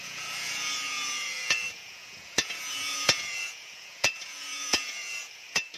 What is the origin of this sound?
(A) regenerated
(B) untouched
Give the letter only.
A